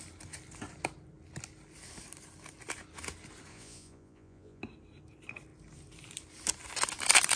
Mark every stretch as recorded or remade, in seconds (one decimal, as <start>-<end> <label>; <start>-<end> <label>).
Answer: 0.0-3.5 recorded; 3.5-4.6 remade; 4.6-7.4 recorded